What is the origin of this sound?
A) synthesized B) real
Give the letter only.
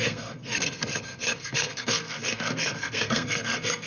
A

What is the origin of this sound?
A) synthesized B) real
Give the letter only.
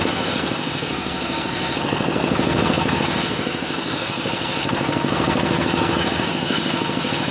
A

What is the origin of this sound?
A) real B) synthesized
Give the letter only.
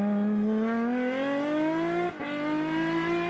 A